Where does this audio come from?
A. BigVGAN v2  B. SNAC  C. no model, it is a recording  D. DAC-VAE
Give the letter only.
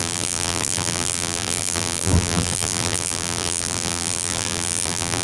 A